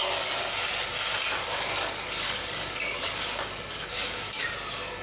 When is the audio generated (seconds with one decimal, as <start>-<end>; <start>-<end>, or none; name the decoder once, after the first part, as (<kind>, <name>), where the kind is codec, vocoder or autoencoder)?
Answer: 0.0-0.7 (codec, DAC); 1.4-4.4